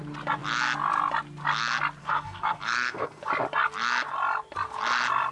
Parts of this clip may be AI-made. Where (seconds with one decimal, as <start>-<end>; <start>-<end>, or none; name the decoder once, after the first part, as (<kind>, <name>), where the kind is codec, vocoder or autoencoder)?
2.0-3.3 (codec, SNAC)